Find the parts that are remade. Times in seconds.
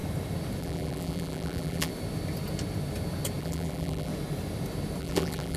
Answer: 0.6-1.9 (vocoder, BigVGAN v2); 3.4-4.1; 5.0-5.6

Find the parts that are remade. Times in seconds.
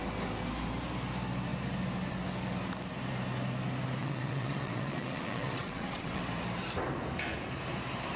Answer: 4.0-6.2 (vocoder, WaveNeXt)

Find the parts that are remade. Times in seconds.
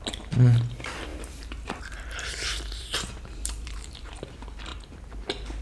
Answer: 1.1-4.2 (vocoder, BigVGAN v2)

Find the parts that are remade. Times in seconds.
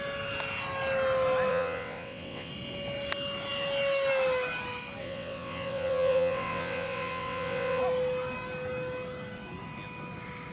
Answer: 1.5-2.5 (vocoder, WaveNeXt); 5.0-7.8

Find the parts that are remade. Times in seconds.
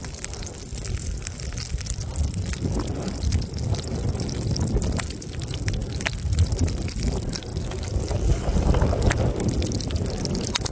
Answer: none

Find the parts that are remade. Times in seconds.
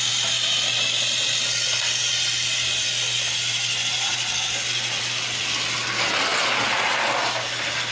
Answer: none